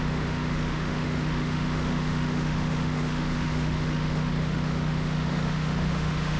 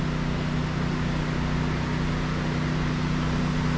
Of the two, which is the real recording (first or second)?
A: second